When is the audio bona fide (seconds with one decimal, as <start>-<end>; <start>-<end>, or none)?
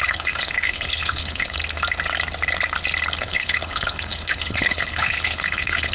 1.6-3.2